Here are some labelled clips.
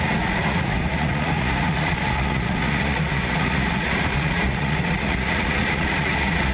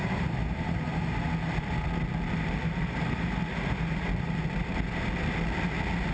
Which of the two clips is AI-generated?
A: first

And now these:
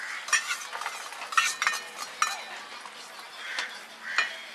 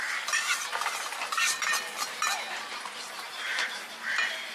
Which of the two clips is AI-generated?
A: second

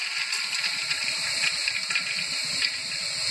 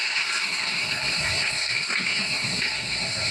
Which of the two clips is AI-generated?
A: second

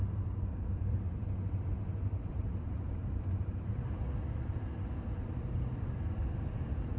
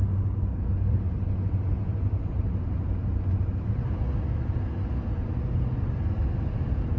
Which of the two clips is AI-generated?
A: first